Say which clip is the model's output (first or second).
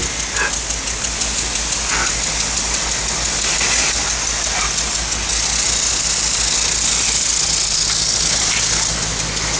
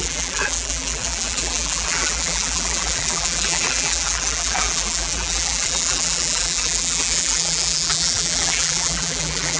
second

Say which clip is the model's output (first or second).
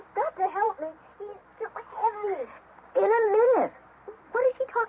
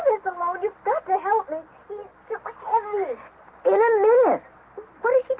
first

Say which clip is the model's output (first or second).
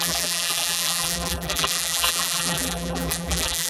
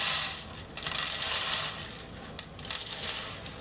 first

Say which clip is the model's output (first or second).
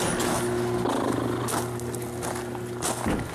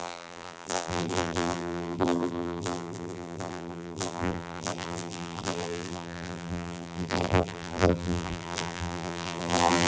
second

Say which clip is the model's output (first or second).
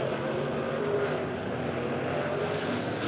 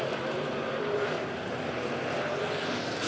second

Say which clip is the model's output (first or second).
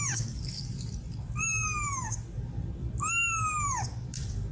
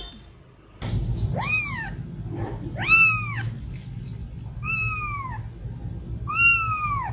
first